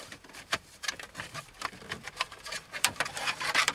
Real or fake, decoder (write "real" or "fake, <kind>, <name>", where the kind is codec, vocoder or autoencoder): fake, vocoder, BigVGAN v2